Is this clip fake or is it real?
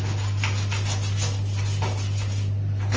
real